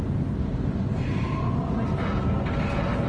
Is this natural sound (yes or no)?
yes